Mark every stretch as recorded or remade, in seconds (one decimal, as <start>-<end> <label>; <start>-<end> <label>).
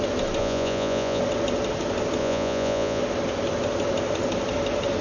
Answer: 0.0-0.4 recorded; 0.4-1.2 remade; 1.2-2.2 recorded; 2.2-3.0 remade; 3.0-5.0 recorded